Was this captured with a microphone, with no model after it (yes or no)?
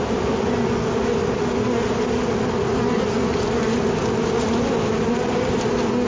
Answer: yes